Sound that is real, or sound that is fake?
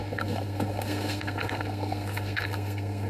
fake